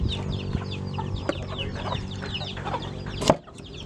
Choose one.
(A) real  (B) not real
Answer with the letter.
A